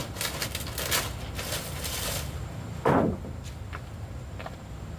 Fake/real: real